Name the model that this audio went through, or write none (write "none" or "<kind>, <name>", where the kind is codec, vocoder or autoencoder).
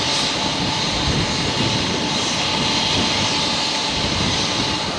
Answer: vocoder, BigVGAN v2